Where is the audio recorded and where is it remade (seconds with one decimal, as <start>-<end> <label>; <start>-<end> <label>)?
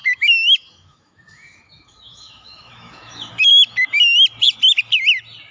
0.0-3.3 remade; 3.3-5.5 recorded